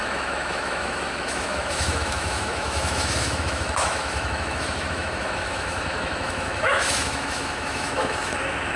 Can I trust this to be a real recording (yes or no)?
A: no